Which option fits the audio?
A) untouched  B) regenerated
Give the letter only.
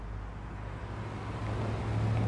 A